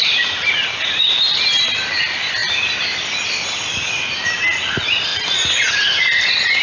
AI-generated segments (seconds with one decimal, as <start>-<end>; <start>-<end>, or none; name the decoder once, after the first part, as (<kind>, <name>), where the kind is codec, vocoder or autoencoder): 0.0-0.5 (vocoder, BigVGAN v2)